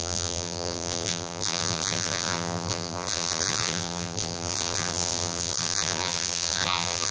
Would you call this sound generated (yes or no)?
yes